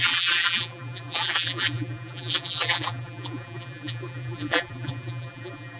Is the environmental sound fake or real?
fake